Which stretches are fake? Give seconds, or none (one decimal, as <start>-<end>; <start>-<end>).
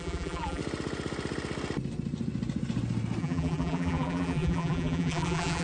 0.0-0.6; 3.2-5.6